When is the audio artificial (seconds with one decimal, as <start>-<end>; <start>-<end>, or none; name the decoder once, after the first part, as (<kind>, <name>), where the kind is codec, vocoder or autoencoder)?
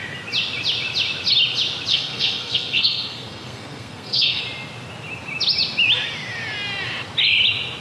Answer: 1.9-4.4 (codec, SNAC)